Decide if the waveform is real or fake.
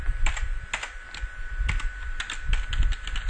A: real